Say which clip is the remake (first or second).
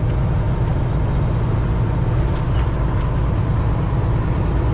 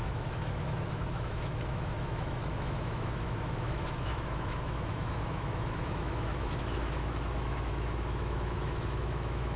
second